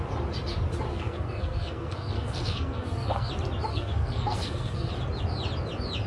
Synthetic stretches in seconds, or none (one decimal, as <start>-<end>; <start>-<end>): 0.9-3.3; 3.7-4.9